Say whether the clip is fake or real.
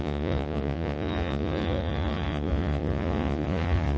fake